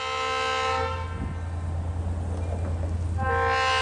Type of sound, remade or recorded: recorded